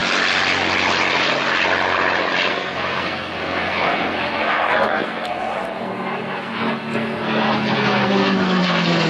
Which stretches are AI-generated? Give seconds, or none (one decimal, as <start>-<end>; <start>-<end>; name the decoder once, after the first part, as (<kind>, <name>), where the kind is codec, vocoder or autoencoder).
2.5-9.1 (codec, SNAC)